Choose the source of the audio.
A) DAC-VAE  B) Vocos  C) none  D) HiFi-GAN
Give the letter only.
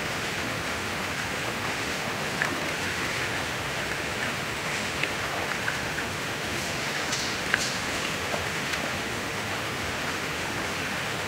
A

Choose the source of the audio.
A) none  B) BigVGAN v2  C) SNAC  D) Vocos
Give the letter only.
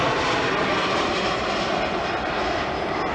A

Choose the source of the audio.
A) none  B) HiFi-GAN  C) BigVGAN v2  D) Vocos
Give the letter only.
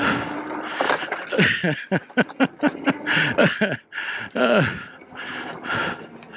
A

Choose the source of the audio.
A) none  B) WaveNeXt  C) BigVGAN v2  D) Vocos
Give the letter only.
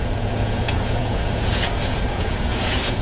D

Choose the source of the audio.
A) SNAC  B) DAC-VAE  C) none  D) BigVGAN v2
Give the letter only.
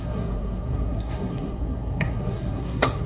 A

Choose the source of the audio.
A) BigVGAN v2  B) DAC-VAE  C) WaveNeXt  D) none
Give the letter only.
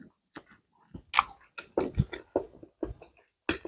D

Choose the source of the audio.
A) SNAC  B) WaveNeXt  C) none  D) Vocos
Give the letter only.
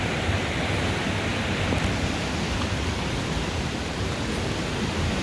C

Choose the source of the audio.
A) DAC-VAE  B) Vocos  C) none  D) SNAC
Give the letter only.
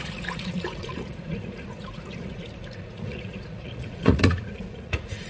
B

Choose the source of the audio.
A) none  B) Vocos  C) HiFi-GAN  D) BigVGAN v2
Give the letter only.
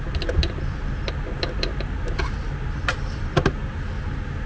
A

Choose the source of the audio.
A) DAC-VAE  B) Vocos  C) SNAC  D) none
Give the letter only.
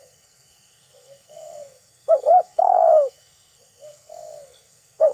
C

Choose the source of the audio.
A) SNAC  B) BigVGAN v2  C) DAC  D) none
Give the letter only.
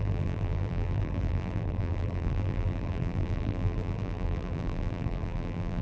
B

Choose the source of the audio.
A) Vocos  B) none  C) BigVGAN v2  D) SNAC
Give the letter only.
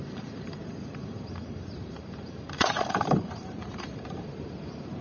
C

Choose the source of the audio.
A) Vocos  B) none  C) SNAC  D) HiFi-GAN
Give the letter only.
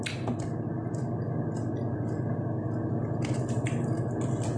B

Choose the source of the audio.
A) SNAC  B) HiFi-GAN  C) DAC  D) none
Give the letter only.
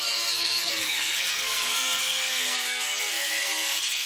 A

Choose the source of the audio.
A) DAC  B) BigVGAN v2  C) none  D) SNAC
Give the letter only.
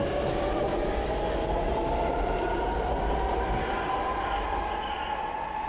C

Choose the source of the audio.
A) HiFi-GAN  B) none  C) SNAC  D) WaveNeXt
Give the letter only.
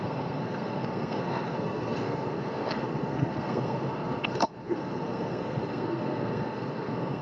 C